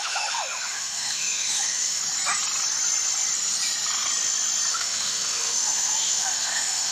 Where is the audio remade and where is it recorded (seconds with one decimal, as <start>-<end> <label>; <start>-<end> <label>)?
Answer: 0.0-2.0 remade; 2.0-4.7 recorded; 4.7-6.9 remade